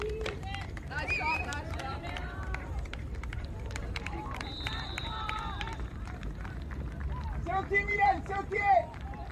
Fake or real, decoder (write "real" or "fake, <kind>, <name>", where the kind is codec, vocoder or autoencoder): fake, vocoder, BigVGAN v2